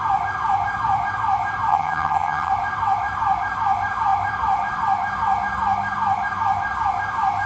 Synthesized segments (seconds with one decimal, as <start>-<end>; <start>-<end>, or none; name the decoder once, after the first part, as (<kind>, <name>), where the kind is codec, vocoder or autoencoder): 1.7-2.5 (vocoder, HiFi-GAN)